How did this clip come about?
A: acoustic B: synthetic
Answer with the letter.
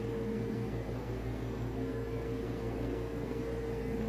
B